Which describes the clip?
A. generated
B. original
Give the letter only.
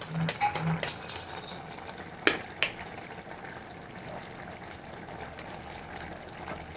B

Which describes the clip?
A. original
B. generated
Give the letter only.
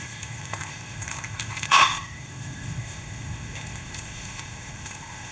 B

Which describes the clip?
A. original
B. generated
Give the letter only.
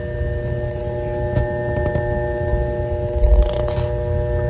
A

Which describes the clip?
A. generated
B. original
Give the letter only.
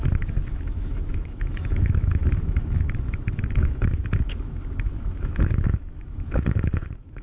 A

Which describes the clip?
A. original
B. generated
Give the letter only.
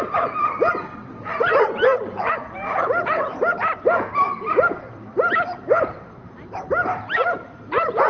B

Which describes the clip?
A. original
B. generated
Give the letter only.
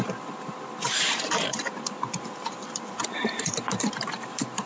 B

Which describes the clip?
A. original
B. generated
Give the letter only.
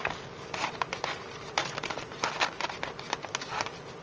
A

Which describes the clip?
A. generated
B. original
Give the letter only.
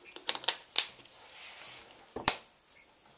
B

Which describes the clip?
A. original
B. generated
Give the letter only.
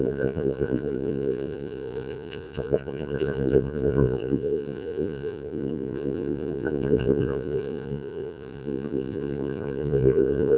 B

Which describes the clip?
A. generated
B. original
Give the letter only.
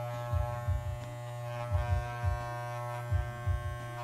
B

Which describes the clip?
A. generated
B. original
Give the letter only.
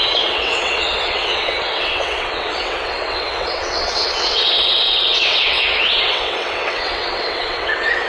A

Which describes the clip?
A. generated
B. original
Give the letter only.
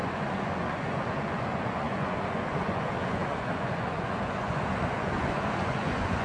A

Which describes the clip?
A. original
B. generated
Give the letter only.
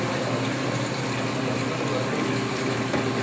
A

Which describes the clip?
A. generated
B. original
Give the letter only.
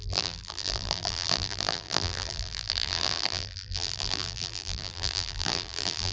A